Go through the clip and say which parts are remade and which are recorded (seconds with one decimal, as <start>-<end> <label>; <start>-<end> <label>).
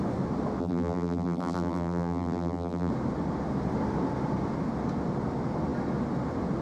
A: 0.0-0.6 recorded; 0.6-2.9 remade; 2.9-6.6 recorded